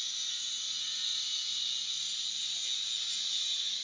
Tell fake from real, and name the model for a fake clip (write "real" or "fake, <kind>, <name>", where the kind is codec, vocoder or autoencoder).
real